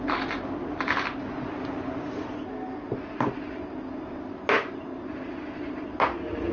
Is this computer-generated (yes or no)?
no